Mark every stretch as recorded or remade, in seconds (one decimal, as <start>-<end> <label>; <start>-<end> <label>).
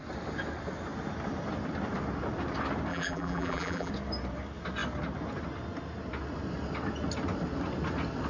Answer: 0.0-2.9 recorded; 2.9-3.9 remade; 3.9-8.3 recorded